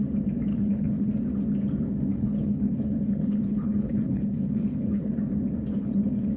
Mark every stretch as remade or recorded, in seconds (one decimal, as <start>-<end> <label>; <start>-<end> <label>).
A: 0.0-0.5 recorded; 0.5-1.1 remade; 1.1-2.1 recorded; 2.1-5.1 remade; 5.1-5.7 recorded; 5.7-6.4 remade